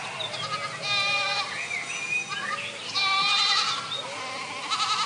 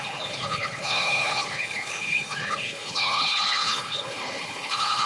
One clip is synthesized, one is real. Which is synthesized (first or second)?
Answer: second